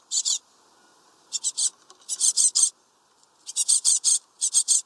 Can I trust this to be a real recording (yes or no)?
no